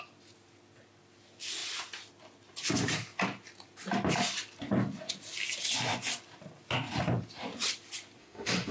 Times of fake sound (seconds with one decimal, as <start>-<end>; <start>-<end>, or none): 8.2-8.7